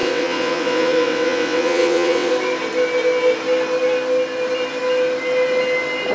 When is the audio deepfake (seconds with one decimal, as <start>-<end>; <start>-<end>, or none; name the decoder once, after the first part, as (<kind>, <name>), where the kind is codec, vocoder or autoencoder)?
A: 0.0-2.3 (vocoder, WaveNeXt)